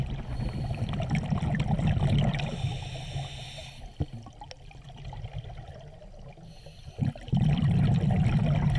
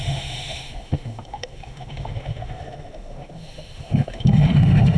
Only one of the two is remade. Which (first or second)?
second